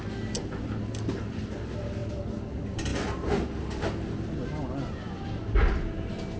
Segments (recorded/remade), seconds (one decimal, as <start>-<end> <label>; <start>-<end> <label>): 0.0-6.4 recorded